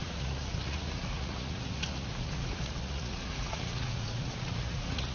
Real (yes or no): no